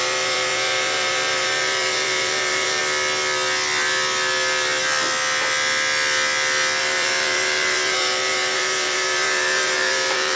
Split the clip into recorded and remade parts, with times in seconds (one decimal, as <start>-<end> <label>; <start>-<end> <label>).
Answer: 0.0-2.8 remade; 2.8-6.8 recorded; 6.8-10.4 remade

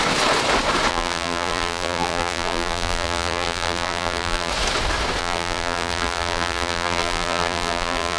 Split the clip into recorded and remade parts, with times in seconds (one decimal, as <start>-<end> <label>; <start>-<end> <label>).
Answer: 0.0-0.9 recorded; 0.9-4.5 remade; 4.5-5.2 recorded; 5.2-8.2 remade

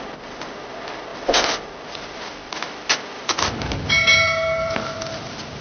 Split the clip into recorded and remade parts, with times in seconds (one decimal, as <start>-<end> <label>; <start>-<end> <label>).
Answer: 0.0-5.6 recorded

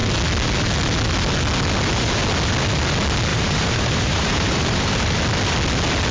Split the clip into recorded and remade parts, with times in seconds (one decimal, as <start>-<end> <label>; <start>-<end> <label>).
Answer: 0.0-3.3 recorded; 3.3-5.2 remade; 5.2-6.1 recorded

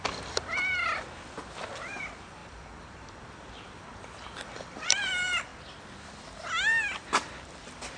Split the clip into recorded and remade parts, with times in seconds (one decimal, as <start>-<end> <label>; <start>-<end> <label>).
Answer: 0.0-5.5 remade; 5.5-7.0 recorded; 7.0-8.0 remade